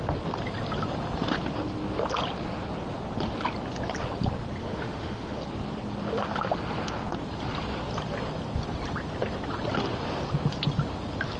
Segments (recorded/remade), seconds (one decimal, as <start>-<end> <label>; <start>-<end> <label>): 0.0-4.6 recorded; 4.6-5.4 remade; 5.4-11.4 recorded